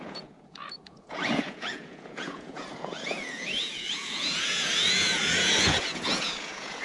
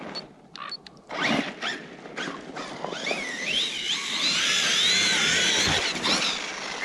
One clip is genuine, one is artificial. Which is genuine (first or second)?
second